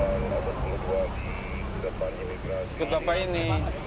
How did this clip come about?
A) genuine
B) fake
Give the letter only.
A